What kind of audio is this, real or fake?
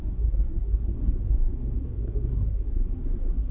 fake